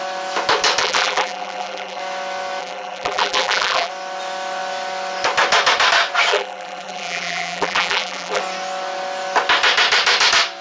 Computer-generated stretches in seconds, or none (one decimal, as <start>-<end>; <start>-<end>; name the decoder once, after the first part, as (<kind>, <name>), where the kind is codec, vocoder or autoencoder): 0.8-2.0 (vocoder, BigVGAN v2); 2.6-3.9; 6.3-8.4